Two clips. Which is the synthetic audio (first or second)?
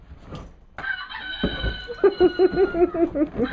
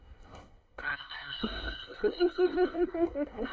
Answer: second